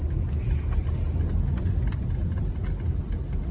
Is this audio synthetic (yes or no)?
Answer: no